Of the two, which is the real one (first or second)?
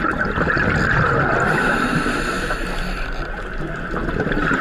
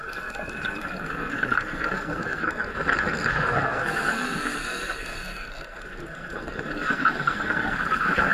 first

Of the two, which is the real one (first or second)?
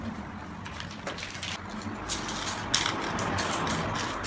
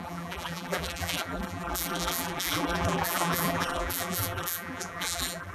first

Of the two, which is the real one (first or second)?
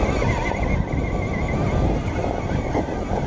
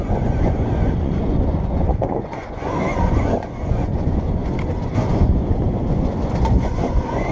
first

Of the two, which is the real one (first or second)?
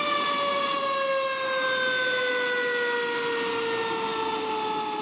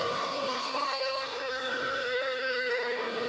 first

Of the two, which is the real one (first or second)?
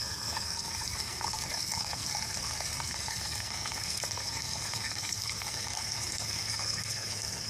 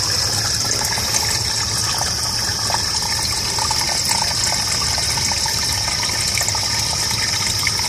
second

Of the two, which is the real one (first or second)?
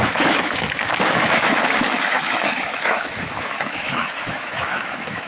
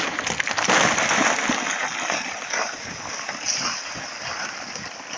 second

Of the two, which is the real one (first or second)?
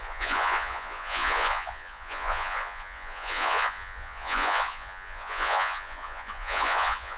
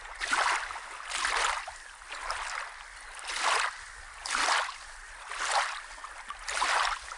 second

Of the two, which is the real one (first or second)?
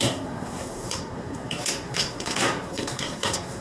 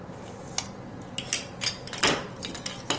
second